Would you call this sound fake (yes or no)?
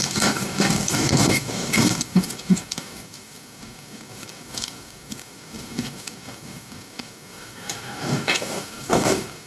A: yes